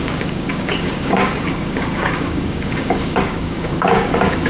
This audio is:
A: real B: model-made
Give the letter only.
B